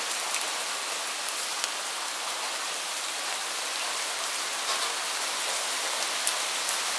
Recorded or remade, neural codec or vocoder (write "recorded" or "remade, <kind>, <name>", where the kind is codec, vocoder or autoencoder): recorded